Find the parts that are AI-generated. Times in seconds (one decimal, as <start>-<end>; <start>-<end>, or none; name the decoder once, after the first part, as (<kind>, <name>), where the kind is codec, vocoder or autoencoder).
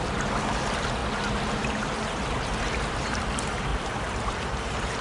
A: 0.0-1.0 (vocoder, BigVGAN v2); 1.5-5.0